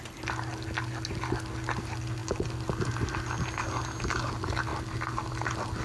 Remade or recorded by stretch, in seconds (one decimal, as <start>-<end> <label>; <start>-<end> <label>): 0.0-5.8 recorded